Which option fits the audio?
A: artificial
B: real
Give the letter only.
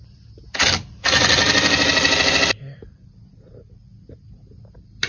B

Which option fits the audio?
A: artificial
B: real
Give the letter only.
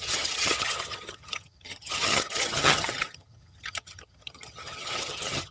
A